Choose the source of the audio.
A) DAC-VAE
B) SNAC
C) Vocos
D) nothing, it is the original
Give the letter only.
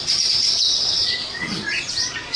C